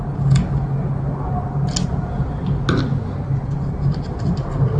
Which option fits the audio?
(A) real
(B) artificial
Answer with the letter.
A